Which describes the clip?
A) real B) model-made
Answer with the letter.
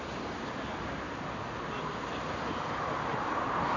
A